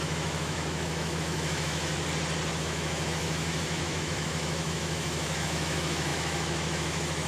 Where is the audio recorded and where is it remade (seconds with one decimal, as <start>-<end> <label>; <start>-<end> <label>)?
0.0-1.9 remade; 1.9-2.5 recorded; 2.5-7.3 remade